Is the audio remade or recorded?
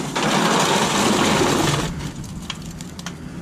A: recorded